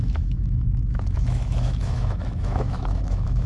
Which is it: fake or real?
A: fake